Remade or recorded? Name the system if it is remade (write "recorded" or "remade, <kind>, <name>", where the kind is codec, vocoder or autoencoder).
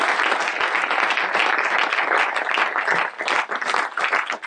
recorded